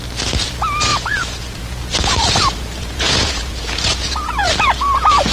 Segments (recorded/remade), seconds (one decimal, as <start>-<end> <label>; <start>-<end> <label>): 0.0-0.9 recorded; 0.9-1.6 remade; 1.6-2.0 recorded; 2.0-4.5 remade; 4.5-5.3 recorded